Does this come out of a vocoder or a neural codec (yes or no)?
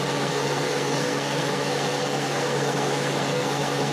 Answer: yes